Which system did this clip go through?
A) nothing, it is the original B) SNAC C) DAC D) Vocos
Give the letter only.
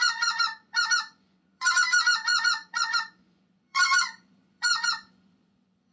D